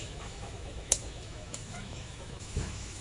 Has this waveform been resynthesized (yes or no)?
yes